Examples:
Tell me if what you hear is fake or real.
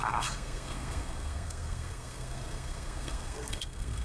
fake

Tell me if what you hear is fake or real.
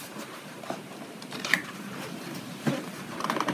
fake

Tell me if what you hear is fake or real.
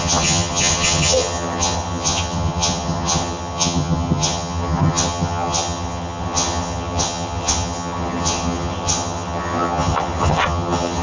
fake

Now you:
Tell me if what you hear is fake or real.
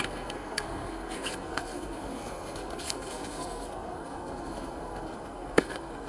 fake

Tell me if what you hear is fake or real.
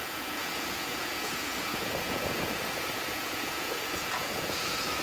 fake